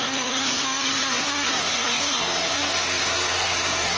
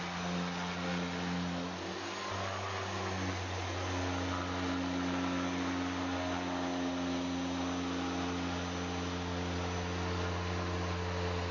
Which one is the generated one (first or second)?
first